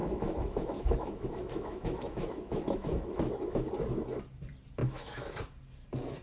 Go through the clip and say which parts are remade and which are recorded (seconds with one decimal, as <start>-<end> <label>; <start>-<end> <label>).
0.0-3.7 remade; 3.7-4.8 recorded; 4.8-5.4 remade; 5.4-6.2 recorded